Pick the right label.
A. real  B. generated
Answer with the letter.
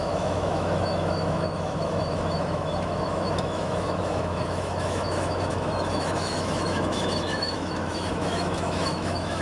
B